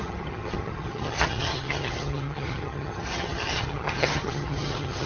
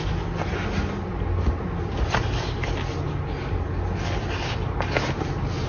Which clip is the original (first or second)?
second